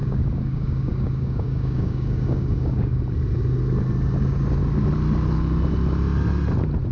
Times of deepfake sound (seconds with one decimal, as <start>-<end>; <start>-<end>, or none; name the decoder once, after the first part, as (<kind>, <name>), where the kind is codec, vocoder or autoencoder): 0.0-3.0 (codec, DAC)